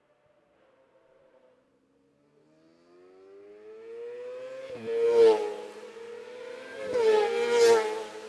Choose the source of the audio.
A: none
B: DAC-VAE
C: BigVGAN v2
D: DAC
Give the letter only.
A